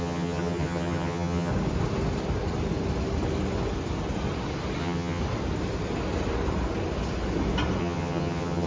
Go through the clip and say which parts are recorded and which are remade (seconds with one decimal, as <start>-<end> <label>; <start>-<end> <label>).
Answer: 0.0-1.5 remade; 1.5-4.8 recorded; 4.8-5.2 remade; 5.2-7.8 recorded; 7.8-8.7 remade